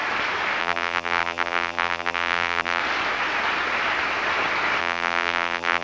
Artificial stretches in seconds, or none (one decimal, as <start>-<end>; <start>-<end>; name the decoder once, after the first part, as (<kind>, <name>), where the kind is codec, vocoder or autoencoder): 0.6-2.8 (vocoder, BigVGAN v2); 4.8-5.8